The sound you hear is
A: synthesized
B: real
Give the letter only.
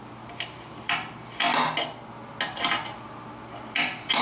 B